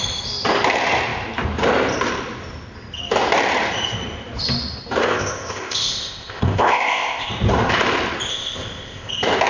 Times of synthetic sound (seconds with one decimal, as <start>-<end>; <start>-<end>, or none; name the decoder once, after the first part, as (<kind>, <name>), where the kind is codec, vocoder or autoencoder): 5.0-7.3 (codec, ZipCodec); 8.3-9.1